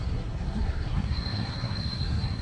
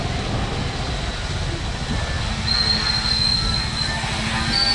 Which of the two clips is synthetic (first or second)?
first